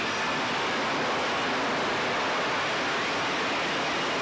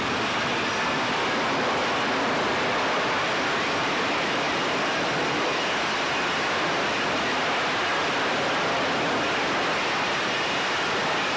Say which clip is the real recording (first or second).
first